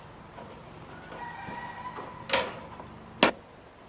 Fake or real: real